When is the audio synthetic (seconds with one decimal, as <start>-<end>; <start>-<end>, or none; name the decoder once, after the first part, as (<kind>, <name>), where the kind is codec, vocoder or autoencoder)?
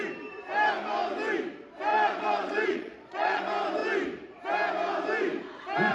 1.9-3.4 (vocoder, Vocos)